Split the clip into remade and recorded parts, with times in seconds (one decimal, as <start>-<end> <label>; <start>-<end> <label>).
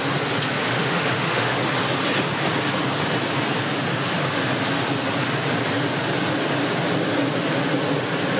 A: 0.0-0.6 recorded; 0.6-1.6 remade; 1.6-8.4 recorded